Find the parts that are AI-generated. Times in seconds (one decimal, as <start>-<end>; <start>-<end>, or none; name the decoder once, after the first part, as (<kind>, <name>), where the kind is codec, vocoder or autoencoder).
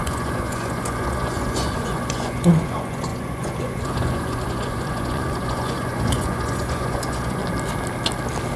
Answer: 0.0-7.4 (vocoder, Vocos)